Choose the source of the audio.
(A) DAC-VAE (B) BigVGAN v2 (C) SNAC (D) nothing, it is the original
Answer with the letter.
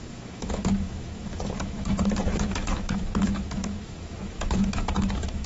A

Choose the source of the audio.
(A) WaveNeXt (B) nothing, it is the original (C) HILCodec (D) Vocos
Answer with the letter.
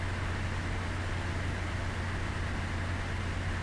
B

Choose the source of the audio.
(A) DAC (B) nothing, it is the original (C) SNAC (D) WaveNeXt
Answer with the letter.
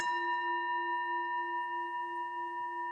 B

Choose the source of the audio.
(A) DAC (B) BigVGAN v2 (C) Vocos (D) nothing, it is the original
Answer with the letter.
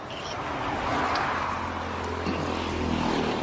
D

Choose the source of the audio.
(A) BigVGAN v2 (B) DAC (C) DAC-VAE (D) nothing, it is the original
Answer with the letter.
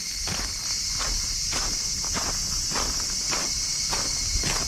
D